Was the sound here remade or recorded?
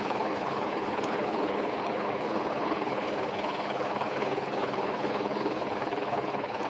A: remade